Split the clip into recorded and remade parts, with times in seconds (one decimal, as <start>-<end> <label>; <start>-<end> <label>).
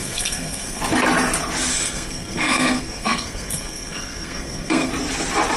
0.0-0.8 remade; 0.8-1.7 recorded; 1.7-4.9 remade; 4.9-5.6 recorded